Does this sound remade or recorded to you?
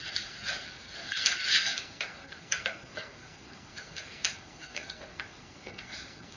remade